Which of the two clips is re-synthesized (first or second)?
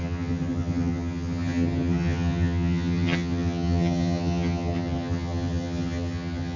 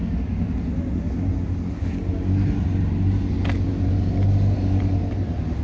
first